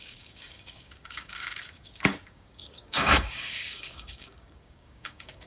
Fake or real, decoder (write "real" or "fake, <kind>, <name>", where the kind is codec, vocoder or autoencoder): fake, codec, DAC